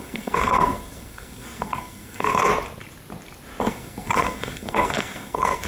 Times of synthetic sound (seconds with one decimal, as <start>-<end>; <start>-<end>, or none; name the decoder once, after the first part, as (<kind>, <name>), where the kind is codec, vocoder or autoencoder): 0.0-2.5 (codec, SNAC); 3.6-5.7